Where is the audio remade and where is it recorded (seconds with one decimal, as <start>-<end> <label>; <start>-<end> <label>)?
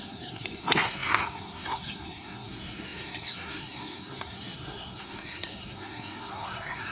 0.0-6.9 remade